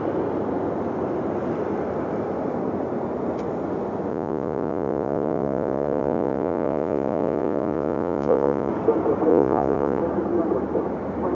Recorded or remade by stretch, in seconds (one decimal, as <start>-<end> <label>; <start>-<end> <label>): 0.0-4.1 recorded; 4.1-8.7 remade; 8.7-9.3 recorded; 9.3-10.0 remade; 10.0-11.3 recorded